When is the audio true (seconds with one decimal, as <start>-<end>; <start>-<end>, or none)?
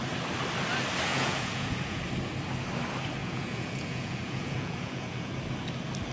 0.0-1.1; 2.0-3.2; 5.3-6.1